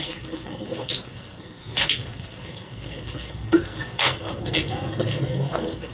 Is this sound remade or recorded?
remade